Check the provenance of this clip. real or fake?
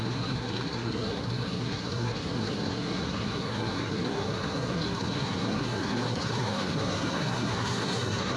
fake